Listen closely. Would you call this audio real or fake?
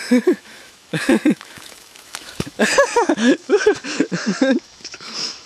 fake